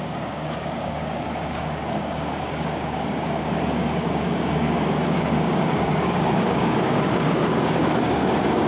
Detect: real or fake fake